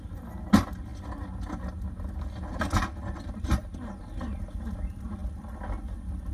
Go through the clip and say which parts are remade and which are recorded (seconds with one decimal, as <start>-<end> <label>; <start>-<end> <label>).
0.0-6.3 recorded